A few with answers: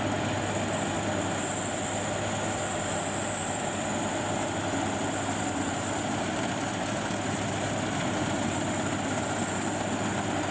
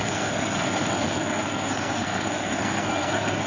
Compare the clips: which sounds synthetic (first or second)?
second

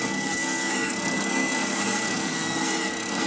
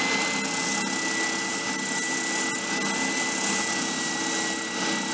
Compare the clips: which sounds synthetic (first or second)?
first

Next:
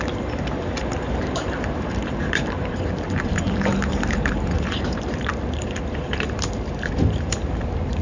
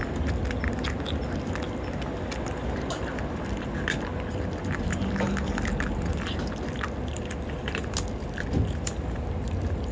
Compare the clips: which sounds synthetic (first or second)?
first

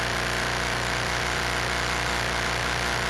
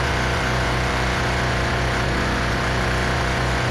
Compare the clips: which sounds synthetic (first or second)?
second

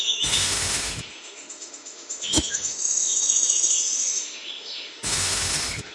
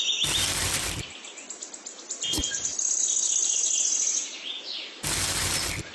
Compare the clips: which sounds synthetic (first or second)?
first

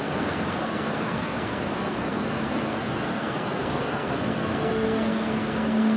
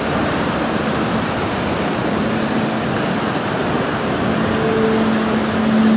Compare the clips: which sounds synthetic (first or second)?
first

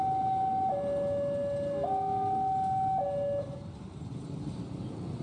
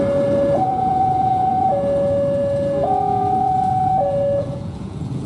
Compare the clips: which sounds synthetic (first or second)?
second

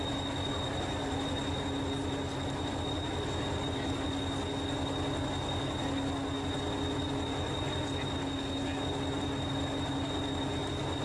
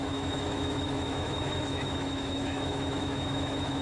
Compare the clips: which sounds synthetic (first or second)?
second